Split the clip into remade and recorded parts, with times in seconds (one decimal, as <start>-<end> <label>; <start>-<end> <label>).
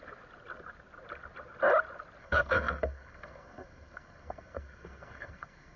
0.0-2.2 recorded; 2.2-5.8 remade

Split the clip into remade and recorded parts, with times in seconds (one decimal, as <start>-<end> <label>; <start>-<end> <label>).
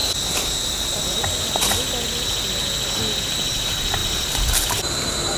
0.0-4.0 recorded; 4.0-5.4 remade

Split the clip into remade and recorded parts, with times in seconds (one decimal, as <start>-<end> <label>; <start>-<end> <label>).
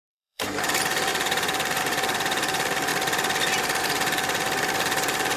0.0-2.9 remade; 2.9-3.8 recorded; 3.8-5.4 remade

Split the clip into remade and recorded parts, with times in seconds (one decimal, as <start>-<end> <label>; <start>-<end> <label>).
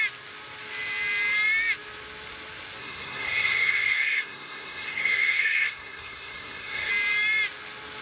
0.0-2.8 recorded; 2.8-6.9 remade; 6.9-8.0 recorded